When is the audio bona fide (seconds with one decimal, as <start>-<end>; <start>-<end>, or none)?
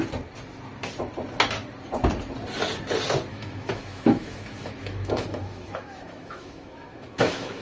0.0-3.3